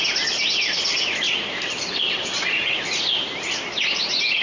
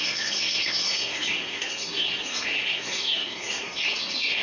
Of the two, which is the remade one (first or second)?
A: second